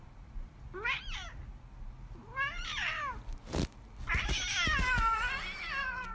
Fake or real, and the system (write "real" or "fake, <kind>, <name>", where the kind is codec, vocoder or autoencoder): real